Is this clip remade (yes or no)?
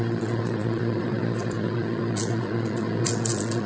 yes